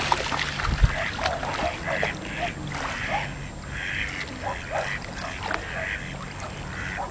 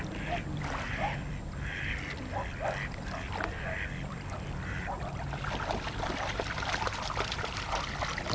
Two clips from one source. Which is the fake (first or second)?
second